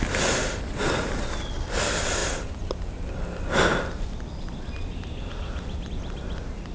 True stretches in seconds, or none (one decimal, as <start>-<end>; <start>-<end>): 0.0-6.7